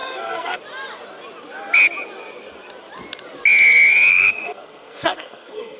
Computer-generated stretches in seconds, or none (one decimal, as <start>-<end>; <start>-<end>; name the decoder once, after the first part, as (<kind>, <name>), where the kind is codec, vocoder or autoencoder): 0.0-0.6 (codec, SNAC); 4.1-5.8

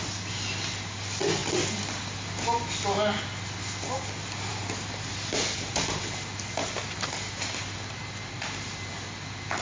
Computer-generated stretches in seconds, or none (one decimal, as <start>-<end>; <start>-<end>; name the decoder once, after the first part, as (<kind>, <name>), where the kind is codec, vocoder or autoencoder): none

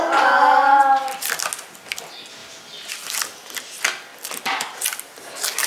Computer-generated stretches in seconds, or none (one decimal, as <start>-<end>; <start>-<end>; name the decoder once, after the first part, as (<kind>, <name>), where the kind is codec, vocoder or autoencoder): none